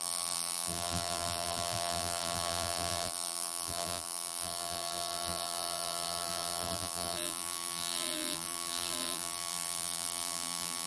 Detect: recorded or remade remade